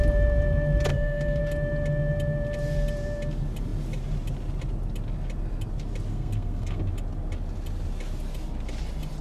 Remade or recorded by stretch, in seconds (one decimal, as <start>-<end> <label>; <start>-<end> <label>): 0.0-0.9 recorded; 0.9-1.4 remade; 1.4-6.1 recorded; 6.1-6.8 remade; 6.8-9.2 recorded